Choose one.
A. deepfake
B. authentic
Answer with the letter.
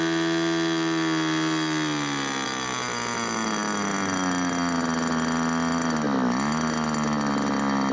B